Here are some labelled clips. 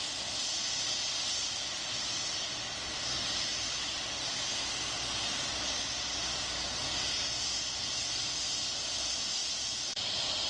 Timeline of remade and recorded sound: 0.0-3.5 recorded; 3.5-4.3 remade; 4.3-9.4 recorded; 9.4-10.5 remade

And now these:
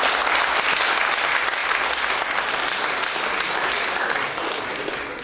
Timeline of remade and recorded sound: 0.0-5.2 recorded

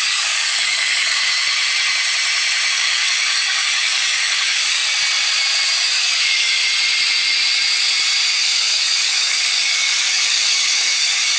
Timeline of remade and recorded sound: 0.0-1.2 remade; 1.2-2.7 recorded; 2.7-4.8 remade; 4.8-6.0 recorded; 6.0-6.6 remade; 6.6-8.3 recorded; 8.3-11.4 remade

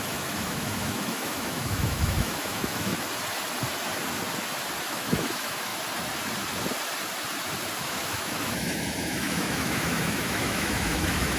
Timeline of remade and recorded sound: 0.0-2.9 remade; 2.9-4.8 recorded; 4.8-5.7 remade; 5.7-7.8 recorded; 7.8-11.4 remade

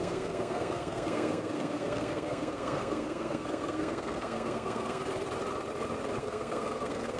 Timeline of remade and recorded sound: 0.0-5.0 remade; 5.0-6.2 recorded; 6.2-7.2 remade